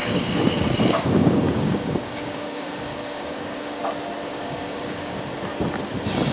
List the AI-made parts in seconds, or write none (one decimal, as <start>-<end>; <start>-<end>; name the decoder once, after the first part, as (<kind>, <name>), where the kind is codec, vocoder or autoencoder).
0.0-3.8 (codec, DAC); 4.3-5.2